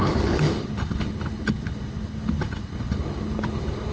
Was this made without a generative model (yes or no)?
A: no